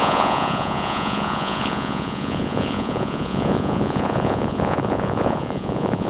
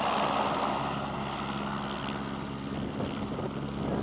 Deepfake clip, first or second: first